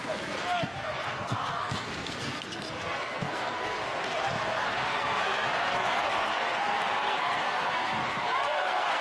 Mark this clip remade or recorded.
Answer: remade